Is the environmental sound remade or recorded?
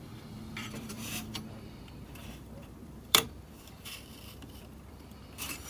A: remade